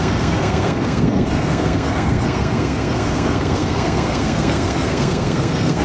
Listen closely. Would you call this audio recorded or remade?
remade